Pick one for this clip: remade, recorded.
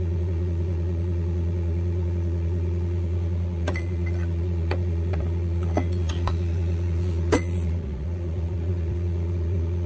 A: remade